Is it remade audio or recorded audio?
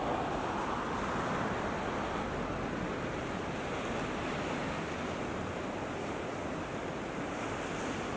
recorded